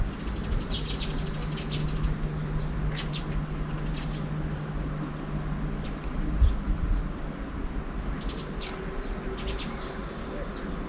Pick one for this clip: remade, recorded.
recorded